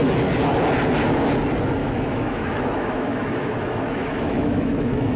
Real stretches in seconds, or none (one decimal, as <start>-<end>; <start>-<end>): 0.0-1.8